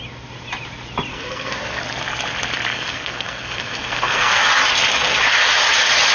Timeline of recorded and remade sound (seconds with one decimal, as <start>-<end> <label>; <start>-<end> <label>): 0.0-1.1 recorded; 1.1-1.8 remade; 1.8-2.7 recorded; 2.7-4.4 remade; 4.4-6.1 recorded